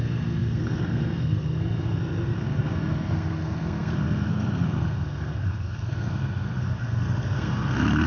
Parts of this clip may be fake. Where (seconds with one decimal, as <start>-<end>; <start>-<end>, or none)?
0.0-8.1